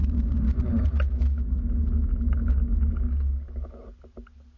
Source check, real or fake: real